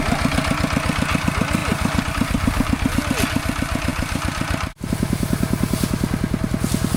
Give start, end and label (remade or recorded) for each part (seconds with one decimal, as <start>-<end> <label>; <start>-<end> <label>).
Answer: 0.0-3.9 recorded; 3.9-4.9 remade; 4.9-7.0 recorded